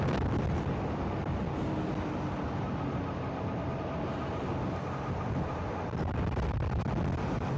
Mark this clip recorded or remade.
recorded